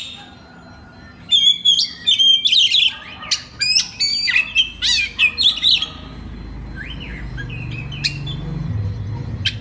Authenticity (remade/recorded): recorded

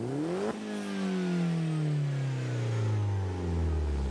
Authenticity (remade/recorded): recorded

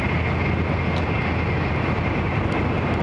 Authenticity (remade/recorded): recorded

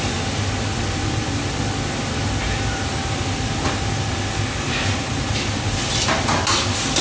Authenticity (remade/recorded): recorded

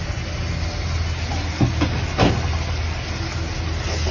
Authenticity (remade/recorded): recorded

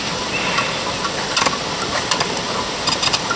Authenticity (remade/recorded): recorded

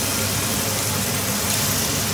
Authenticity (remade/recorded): recorded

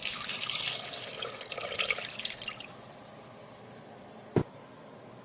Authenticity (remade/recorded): recorded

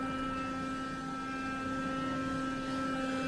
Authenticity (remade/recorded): recorded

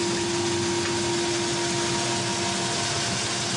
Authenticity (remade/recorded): recorded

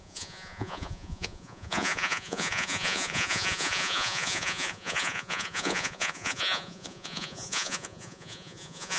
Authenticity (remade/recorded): remade